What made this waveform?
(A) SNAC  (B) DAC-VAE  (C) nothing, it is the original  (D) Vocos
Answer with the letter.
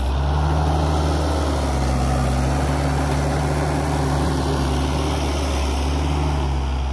C